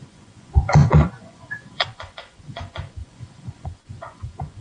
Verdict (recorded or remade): remade